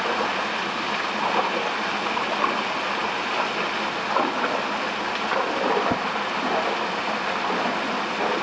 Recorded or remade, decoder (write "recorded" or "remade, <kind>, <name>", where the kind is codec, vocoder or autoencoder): recorded